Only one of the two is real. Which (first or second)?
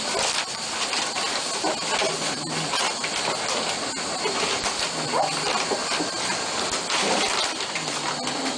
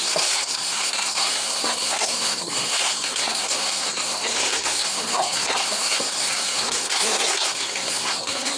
first